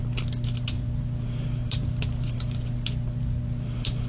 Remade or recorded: recorded